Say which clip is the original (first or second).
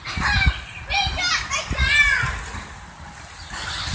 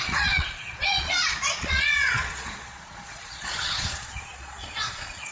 first